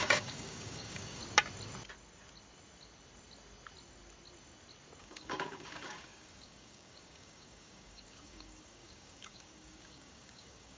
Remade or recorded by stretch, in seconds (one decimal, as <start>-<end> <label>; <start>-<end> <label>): 0.0-1.2 remade; 1.2-5.0 recorded; 5.0-10.8 remade